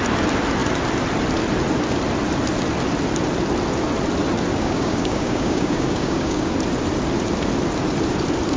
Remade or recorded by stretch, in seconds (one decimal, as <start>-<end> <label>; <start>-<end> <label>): 0.0-4.5 recorded; 4.5-6.5 remade; 6.5-8.6 recorded

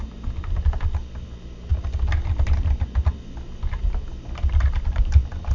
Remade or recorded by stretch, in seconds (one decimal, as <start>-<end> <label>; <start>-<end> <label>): 0.0-5.5 recorded

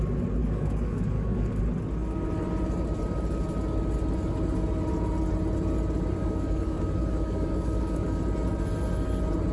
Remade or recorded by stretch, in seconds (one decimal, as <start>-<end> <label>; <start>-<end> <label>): 0.0-0.4 recorded; 0.4-1.6 remade; 1.6-6.2 recorded; 6.2-8.2 remade; 8.2-9.5 recorded

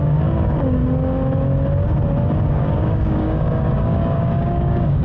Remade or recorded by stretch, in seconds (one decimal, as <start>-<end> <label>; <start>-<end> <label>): 0.0-0.8 remade; 0.8-2.5 recorded; 2.5-5.0 remade

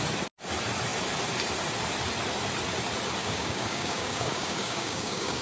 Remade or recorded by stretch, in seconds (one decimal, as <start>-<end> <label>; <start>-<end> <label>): 0.0-3.2 recorded; 3.2-5.4 remade

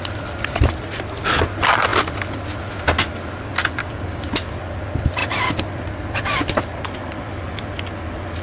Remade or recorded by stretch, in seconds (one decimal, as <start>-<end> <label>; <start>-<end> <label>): 0.0-3.8 recorded; 3.8-4.3 remade; 4.3-8.4 recorded